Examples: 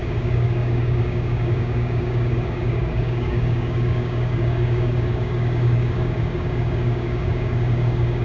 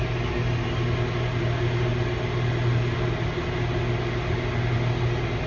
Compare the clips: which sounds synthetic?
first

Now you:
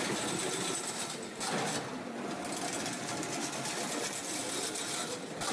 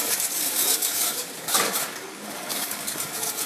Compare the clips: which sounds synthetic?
second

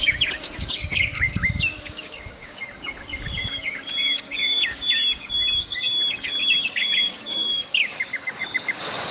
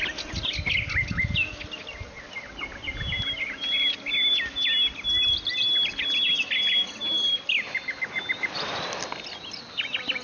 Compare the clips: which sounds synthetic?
first